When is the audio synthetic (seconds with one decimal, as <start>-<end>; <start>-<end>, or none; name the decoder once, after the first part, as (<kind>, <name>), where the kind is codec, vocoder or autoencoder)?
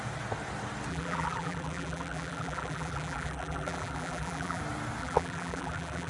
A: 0.9-4.6 (vocoder, BigVGAN v2); 5.0-6.1